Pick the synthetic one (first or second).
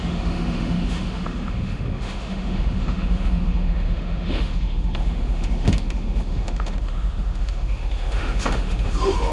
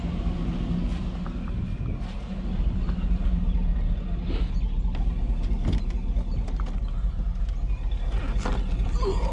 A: first